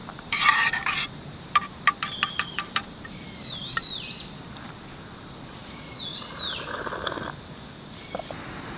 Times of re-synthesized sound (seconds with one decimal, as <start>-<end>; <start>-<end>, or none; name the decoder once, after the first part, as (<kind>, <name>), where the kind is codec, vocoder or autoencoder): 0.0-3.4 (vocoder, BigVGAN v2); 6.1-6.8